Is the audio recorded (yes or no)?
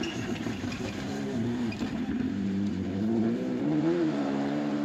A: no